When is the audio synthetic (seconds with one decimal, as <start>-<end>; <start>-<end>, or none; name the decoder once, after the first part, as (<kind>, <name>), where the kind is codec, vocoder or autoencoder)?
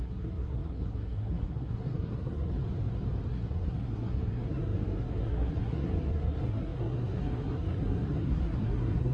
0.0-2.5 (codec, SNAC); 3.3-9.1